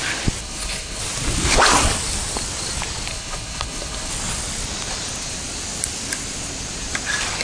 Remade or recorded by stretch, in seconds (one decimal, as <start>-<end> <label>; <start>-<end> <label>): 0.0-0.4 recorded; 0.4-1.0 remade; 1.0-3.1 recorded; 3.1-4.1 remade; 4.1-7.4 recorded

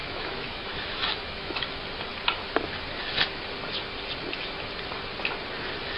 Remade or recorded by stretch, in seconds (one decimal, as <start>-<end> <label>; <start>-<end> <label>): 0.0-1.7 remade; 1.7-6.0 recorded

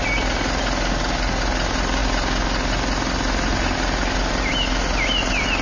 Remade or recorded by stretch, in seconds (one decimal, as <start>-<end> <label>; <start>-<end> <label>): 0.0-5.6 recorded

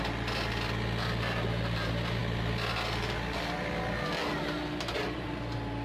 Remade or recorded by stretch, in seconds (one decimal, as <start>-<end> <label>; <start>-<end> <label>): 0.0-5.8 recorded